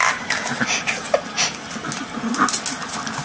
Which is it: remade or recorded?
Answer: recorded